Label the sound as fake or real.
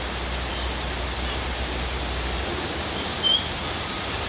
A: real